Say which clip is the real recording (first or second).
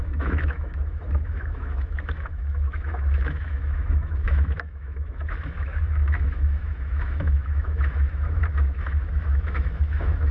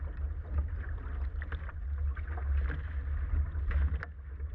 second